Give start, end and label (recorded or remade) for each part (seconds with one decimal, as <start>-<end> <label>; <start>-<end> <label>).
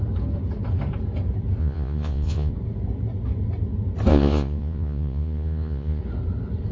0.0-1.6 recorded; 1.6-2.5 remade; 2.5-4.1 recorded; 4.1-6.0 remade; 6.0-6.7 recorded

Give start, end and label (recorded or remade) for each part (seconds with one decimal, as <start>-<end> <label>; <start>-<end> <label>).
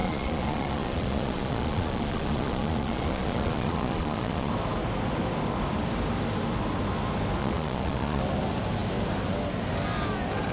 0.0-4.5 remade; 4.5-7.4 recorded; 7.4-8.2 remade; 8.2-10.5 recorded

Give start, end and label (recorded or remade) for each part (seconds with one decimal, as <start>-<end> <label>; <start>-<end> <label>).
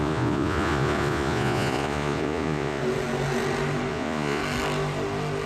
0.0-2.8 remade; 2.8-3.9 recorded; 3.9-4.4 remade; 4.4-5.5 recorded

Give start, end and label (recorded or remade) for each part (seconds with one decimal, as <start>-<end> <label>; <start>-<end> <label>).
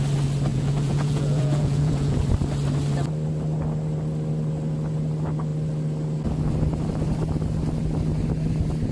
0.0-0.5 recorded; 0.5-2.2 remade; 2.2-8.9 recorded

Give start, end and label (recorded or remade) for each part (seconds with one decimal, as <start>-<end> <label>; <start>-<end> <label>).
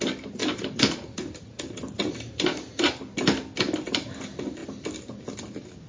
0.0-5.9 recorded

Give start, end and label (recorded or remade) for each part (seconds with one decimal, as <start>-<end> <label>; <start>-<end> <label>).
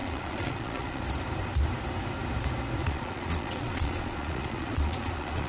0.0-1.0 remade; 1.0-2.8 recorded; 2.8-5.5 remade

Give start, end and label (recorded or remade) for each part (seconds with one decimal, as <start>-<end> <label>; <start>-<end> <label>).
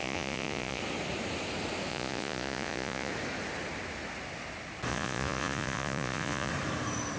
0.0-0.8 remade; 0.8-1.9 recorded; 1.9-3.1 remade; 3.1-4.9 recorded; 4.9-6.5 remade; 6.5-7.2 recorded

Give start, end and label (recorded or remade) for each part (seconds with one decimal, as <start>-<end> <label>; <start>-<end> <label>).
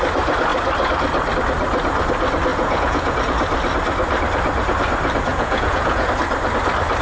0.0-2.5 recorded; 2.5-3.1 remade; 3.1-5.3 recorded; 5.3-6.1 remade; 6.1-7.0 recorded